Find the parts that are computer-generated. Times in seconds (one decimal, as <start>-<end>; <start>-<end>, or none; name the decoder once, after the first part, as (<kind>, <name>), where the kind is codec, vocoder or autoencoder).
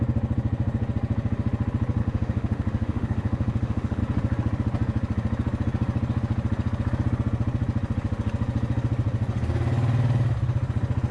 2.0-4.0 (autoencoder, DAC-VAE)